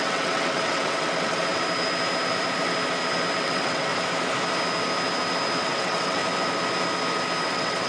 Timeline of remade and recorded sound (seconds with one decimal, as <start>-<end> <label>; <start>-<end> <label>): 0.0-1.5 remade; 1.5-3.4 recorded; 3.4-3.9 remade; 3.9-5.6 recorded; 5.6-6.2 remade; 6.2-7.4 recorded; 7.4-7.9 remade